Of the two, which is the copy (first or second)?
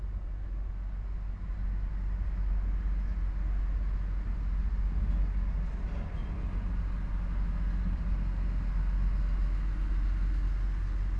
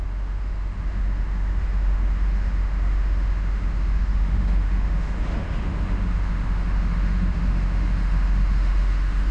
second